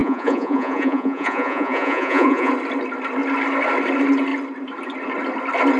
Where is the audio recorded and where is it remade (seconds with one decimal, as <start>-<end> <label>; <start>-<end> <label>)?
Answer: 0.0-2.5 remade; 2.5-5.8 recorded